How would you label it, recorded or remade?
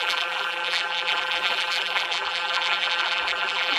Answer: remade